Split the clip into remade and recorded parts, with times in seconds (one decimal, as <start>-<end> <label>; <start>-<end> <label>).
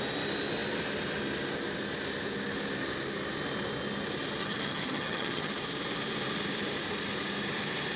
0.0-4.4 recorded; 4.4-5.5 remade; 5.5-8.0 recorded